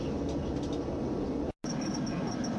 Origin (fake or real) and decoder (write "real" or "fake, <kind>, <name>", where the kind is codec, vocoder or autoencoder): real